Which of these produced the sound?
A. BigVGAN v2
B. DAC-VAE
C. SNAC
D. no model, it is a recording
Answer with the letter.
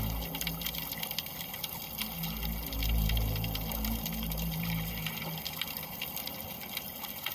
D